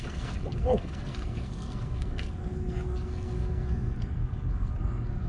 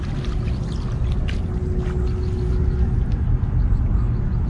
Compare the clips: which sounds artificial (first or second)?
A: first